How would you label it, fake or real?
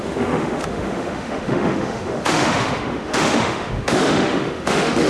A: fake